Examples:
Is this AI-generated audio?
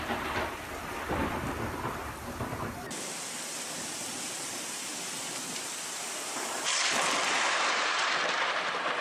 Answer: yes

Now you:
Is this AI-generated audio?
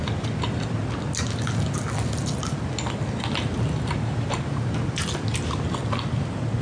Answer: no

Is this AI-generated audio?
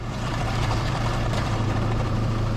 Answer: yes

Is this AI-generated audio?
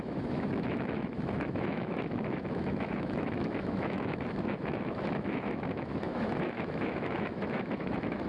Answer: yes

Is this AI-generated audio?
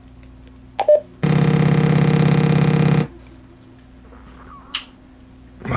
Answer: no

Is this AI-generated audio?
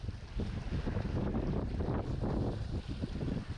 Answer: no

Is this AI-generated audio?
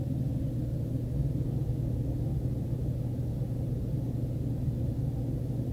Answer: no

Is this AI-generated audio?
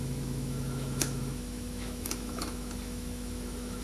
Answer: yes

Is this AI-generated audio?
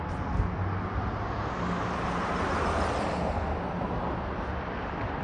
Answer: no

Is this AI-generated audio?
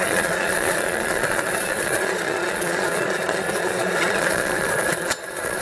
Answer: yes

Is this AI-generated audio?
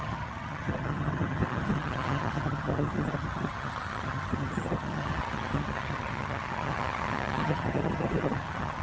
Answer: yes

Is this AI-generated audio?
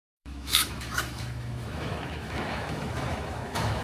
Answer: yes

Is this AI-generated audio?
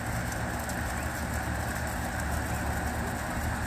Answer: no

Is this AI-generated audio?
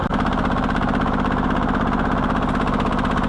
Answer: no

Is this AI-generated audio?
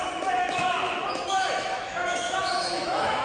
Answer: yes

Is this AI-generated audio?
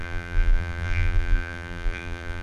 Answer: yes